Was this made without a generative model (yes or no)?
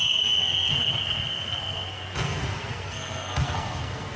no